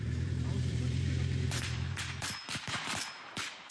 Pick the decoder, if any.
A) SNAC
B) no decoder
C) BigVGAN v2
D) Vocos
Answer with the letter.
C